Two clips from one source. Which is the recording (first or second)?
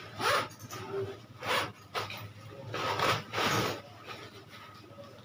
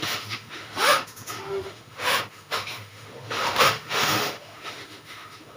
first